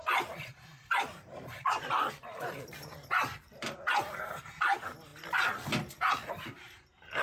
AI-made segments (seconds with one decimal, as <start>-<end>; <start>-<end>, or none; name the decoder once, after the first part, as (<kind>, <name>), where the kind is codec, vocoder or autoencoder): 0.0-5.1 (vocoder, BigVGAN v2); 6.3-7.2